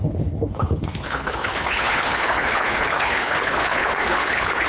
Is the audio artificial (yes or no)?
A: yes